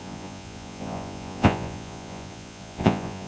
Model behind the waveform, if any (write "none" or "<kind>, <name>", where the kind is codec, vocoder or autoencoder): vocoder, Vocos